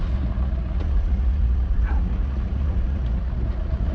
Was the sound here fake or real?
fake